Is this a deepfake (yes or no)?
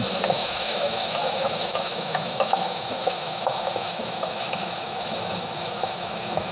yes